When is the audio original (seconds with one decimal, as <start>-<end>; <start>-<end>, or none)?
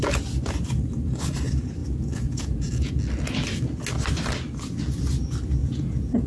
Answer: 0.0-1.8; 2.9-5.6